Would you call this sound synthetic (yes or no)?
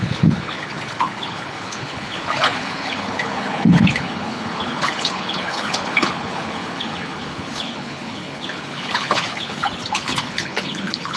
yes